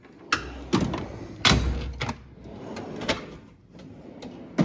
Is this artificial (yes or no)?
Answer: no